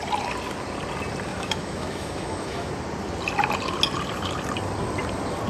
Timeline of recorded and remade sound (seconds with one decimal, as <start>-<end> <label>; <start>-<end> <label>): 0.0-1.3 recorded; 1.3-2.7 remade; 2.7-5.5 recorded